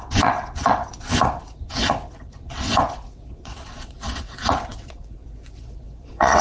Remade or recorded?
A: remade